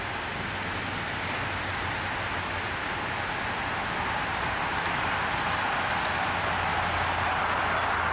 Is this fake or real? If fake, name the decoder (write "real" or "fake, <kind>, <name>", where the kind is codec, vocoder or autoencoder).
real